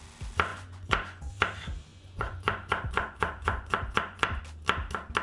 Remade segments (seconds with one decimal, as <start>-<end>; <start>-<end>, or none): 0.5-1.3; 1.9-4.4